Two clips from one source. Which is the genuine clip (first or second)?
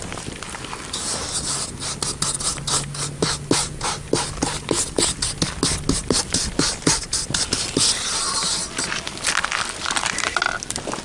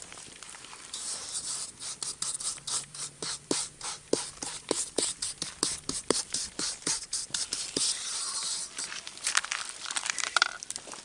first